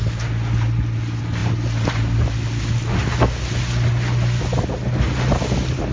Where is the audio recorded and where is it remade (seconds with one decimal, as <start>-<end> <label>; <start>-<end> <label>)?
0.0-5.9 recorded